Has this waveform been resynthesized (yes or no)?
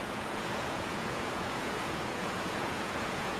yes